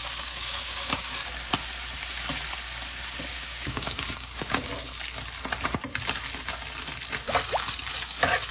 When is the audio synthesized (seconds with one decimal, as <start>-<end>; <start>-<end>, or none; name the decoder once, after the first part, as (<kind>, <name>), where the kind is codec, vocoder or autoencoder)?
0.0-1.5 (codec, DAC); 3.3-4.7